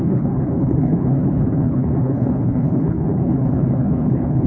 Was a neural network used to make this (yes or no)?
yes